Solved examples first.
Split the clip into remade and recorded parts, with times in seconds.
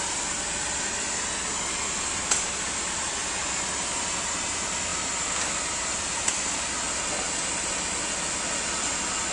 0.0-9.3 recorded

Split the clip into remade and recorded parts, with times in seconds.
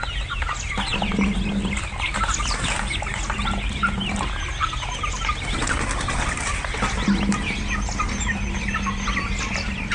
0.0-9.9 recorded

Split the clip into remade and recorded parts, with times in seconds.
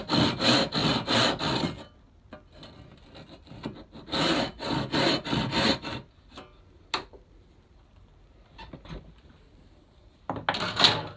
0.0-11.2 recorded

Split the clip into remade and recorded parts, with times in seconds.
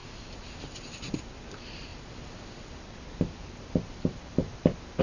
0.0-5.0 recorded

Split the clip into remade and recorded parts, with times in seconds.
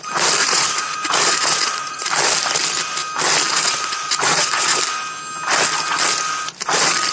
0.0-0.4 recorded; 0.4-2.1 remade; 2.1-3.5 recorded; 3.5-4.8 remade; 4.8-7.1 recorded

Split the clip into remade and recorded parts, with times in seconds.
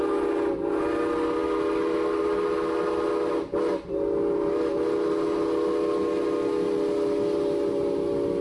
0.0-8.4 recorded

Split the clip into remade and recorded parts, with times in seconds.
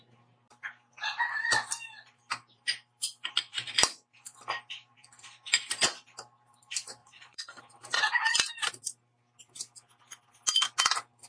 0.0-7.0 recorded; 7.0-7.6 remade; 7.6-11.3 recorded